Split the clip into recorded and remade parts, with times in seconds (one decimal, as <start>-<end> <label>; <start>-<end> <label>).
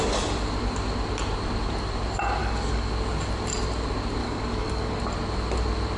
0.0-2.4 recorded; 2.4-2.9 remade; 2.9-4.2 recorded; 4.2-5.0 remade; 5.0-6.0 recorded